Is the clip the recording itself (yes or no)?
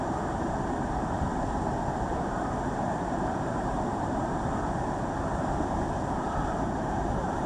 no